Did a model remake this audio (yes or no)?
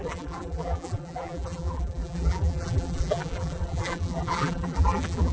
yes